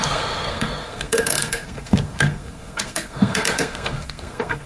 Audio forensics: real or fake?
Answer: fake